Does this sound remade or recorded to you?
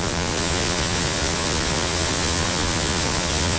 remade